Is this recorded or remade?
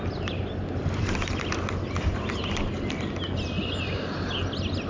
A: recorded